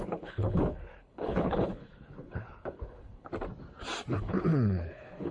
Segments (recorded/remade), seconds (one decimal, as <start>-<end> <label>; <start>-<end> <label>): 0.0-3.3 remade; 3.3-4.1 recorded; 4.1-5.3 remade